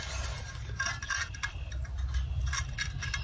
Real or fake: real